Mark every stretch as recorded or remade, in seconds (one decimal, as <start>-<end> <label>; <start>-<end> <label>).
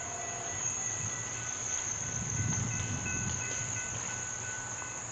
0.0-0.8 recorded; 0.8-3.9 remade; 3.9-5.1 recorded